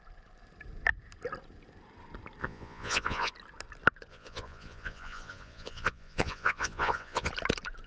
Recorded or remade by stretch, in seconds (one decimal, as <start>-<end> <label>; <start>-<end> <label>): 0.0-2.4 recorded; 2.4-3.3 remade; 3.3-4.1 recorded; 4.1-7.3 remade; 7.3-7.9 recorded